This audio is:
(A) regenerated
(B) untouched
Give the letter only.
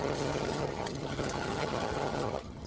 A